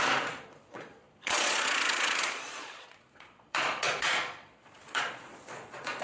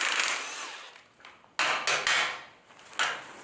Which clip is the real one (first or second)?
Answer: second